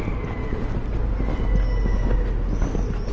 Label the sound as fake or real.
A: real